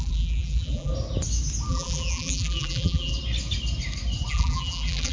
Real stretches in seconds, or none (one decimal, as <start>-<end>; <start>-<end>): 0.9-1.7; 3.1-4.3